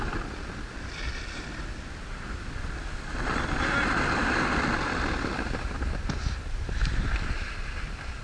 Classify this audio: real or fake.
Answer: real